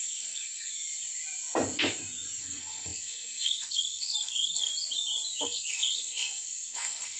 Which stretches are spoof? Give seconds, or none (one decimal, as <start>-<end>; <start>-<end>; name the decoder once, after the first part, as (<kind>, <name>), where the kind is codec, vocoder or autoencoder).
0.0-0.7 (codec, SNAC); 2.4-4.7; 5.4-7.2

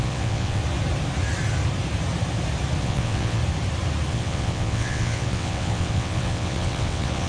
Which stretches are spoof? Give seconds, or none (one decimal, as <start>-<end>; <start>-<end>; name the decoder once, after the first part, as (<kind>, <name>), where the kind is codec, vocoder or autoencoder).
0.0-0.6 (vocoder, WaveNeXt); 2.8-3.4; 4.1-7.3

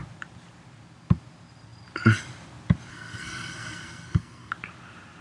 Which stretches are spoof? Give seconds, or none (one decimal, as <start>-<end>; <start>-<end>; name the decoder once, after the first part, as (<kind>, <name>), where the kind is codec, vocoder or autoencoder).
2.9-4.5 (codec, SNAC)